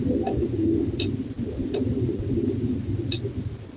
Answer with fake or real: real